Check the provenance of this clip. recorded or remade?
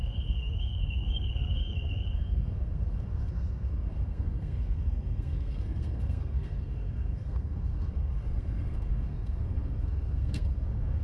remade